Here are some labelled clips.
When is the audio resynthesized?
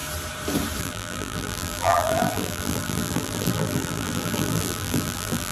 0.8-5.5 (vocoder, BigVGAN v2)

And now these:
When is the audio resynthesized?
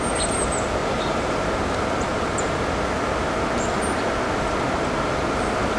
0.8-2.6 (vocoder, BigVGAN v2)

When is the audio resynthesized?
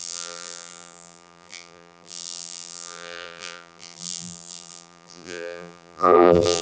0.0-6.6 (vocoder, BigVGAN v2)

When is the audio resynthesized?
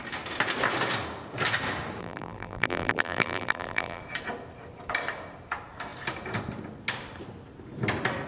2.0-4.0 (vocoder, BigVGAN v2)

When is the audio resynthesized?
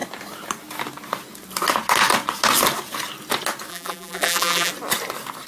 3.7-4.7 (vocoder, BigVGAN v2)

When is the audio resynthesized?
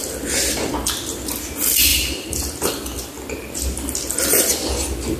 none